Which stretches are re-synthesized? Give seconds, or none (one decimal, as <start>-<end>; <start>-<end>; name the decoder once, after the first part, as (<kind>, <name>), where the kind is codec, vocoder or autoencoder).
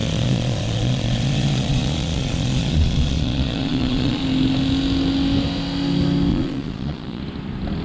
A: 0.0-4.2 (vocoder, Vocos); 6.3-7.2